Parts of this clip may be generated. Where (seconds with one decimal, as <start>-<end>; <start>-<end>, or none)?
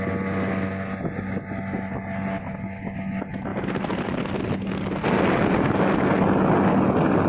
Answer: none